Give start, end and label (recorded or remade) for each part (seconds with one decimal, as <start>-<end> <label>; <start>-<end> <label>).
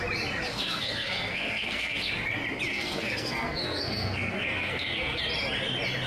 0.0-0.5 recorded; 0.5-2.1 remade; 2.1-2.7 recorded; 2.7-5.2 remade; 5.2-6.1 recorded